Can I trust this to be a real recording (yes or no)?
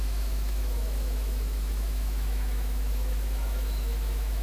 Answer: no